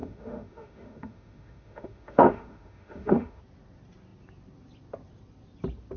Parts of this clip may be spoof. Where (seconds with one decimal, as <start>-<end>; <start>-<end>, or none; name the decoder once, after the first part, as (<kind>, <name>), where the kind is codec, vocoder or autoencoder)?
0.0-3.4 (autoencoder, DAC-VAE)